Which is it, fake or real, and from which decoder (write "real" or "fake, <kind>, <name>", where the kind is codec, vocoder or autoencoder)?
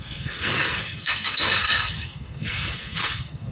fake, codec, SNAC